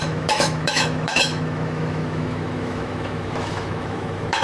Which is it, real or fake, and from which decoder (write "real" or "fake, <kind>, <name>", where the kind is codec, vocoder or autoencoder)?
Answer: fake, autoencoder, DAC-VAE